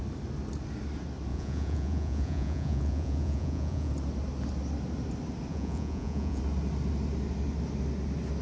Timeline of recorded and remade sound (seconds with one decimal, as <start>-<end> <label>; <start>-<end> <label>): 0.0-1.3 recorded; 1.3-3.9 remade; 3.9-5.5 recorded; 5.5-6.4 remade; 6.4-8.4 recorded